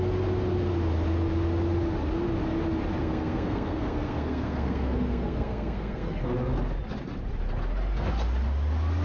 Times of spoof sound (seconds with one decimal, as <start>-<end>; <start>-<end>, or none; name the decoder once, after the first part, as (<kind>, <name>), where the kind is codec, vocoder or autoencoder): 3.0-6.2 (codec, SNAC)